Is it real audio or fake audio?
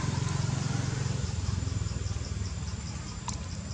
real